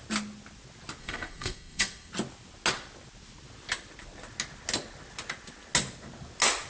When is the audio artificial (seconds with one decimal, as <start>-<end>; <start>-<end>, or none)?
1.0-2.1